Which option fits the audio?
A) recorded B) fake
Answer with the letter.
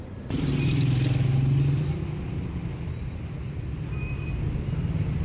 A